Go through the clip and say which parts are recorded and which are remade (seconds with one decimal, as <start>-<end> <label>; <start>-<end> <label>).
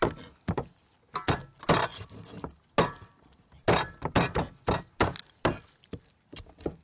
0.0-6.8 recorded